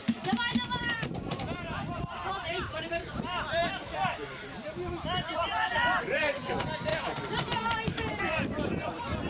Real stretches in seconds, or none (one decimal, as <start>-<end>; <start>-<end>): 0.0-0.8